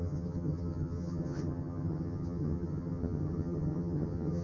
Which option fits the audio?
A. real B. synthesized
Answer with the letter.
B